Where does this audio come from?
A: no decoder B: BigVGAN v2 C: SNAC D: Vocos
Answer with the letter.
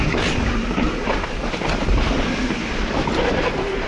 A